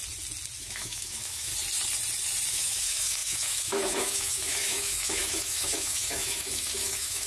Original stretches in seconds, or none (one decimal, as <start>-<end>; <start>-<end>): 0.0-0.6; 1.5-2.5